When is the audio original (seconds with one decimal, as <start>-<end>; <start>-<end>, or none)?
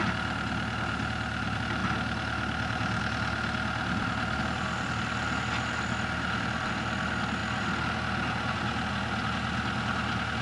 0.0-10.4